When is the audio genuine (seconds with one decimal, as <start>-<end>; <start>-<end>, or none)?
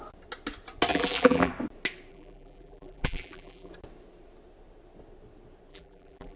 0.0-0.9; 1.5-2.1; 3.7-5.7